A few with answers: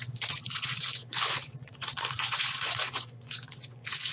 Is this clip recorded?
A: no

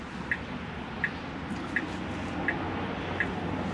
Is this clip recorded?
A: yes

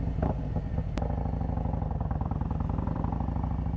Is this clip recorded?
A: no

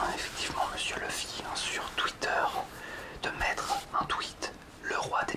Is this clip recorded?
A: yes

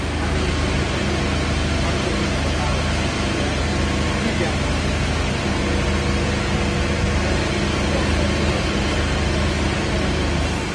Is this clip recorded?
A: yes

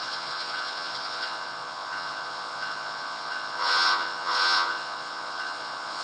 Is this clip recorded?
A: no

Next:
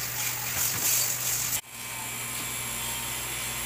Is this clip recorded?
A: yes